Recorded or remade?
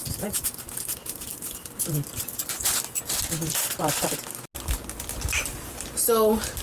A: recorded